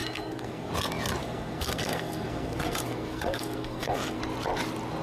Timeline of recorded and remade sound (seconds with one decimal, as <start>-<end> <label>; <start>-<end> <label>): 0.0-0.7 remade; 0.7-1.2 recorded; 1.2-4.2 remade; 4.2-5.0 recorded